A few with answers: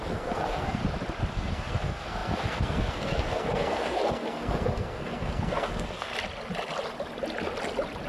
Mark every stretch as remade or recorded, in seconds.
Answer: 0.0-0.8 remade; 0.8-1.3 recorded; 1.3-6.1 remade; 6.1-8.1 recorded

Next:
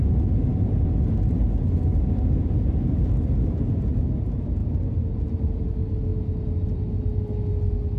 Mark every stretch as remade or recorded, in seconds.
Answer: 0.0-8.0 recorded

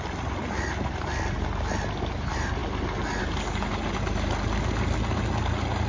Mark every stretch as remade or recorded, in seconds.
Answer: 0.0-5.9 recorded

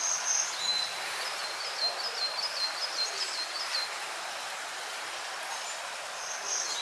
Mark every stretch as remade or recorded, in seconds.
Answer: 0.0-6.8 recorded

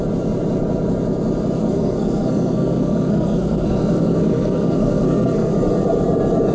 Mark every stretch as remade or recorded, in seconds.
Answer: 0.0-1.6 recorded; 1.6-5.5 remade; 5.5-6.5 recorded